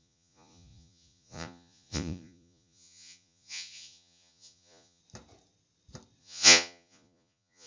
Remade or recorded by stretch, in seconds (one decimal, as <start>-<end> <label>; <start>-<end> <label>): 0.0-5.0 remade; 5.0-6.2 recorded; 6.2-7.7 remade